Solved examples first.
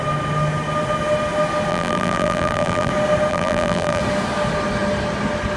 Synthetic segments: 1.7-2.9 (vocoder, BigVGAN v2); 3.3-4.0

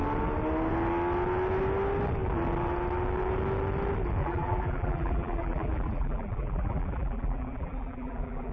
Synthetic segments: 4.2-8.5 (vocoder, BigVGAN v2)

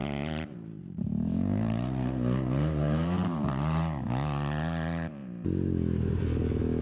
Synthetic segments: 0.0-4.1 (vocoder, BigVGAN v2); 5.2-6.2

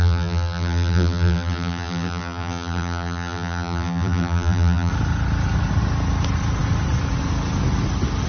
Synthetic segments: 0.0-4.9 (vocoder, BigVGAN v2)

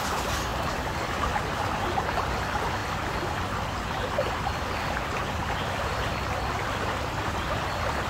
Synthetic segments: none